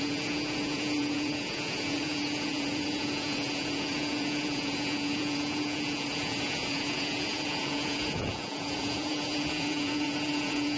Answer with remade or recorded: remade